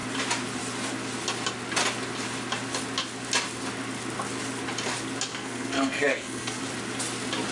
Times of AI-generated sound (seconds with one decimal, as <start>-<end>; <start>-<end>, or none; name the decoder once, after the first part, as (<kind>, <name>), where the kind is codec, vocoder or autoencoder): 5.3-6.6 (codec, SNAC)